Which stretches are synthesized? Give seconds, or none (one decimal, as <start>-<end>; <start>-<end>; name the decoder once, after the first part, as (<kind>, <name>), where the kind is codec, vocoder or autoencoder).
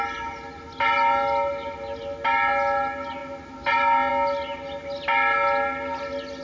none